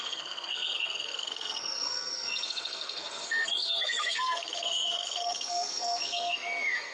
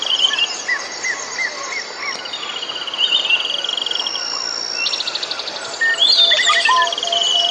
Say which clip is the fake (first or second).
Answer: first